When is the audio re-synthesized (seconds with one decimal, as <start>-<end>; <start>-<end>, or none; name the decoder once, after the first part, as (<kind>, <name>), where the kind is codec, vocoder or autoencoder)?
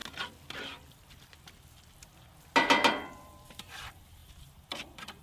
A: 3.1-5.2 (vocoder, BigVGAN v2)